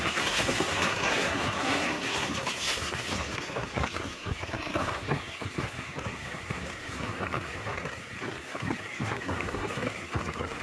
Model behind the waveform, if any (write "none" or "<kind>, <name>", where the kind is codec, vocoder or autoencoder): codec, SNAC